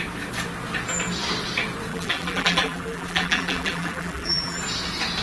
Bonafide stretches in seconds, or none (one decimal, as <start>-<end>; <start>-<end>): 0.0-1.9; 4.6-5.2